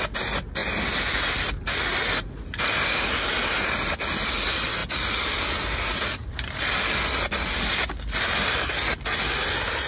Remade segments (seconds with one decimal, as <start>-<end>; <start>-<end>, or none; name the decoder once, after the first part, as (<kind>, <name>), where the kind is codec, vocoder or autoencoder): none

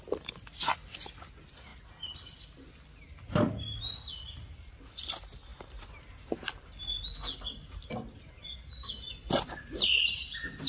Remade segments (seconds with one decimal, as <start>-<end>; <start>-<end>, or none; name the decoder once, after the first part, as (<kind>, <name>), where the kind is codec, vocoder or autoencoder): none

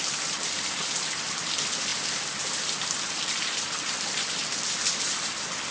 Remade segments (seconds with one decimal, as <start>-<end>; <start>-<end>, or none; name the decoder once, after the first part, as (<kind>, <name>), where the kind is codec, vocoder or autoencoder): none

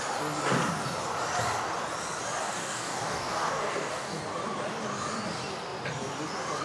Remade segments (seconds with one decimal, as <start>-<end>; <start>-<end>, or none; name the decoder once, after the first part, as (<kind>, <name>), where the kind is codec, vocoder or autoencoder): 2.4-4.2 (codec, DAC)

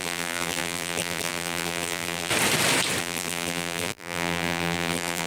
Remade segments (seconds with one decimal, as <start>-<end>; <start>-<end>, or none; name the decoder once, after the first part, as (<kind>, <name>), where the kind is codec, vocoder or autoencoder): 0.0-2.3 (vocoder, BigVGAN v2); 3.0-5.3

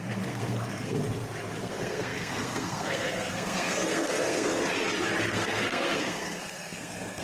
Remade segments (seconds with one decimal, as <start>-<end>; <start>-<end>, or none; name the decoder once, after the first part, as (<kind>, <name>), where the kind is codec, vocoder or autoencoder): 0.0-1.0 (codec, SNAC); 1.6-4.6; 5.3-7.2

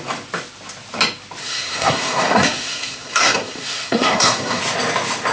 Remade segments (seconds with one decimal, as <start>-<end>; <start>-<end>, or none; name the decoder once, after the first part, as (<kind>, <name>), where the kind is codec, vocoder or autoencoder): 1.4-4.6 (codec, SNAC)